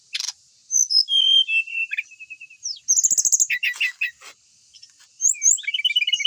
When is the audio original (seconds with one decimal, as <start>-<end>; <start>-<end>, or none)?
0.0-6.3